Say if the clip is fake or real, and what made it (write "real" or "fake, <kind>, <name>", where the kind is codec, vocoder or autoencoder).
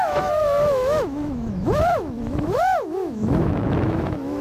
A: fake, autoencoder, DAC-VAE